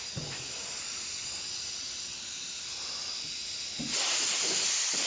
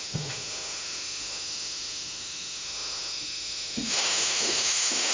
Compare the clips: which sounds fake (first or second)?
second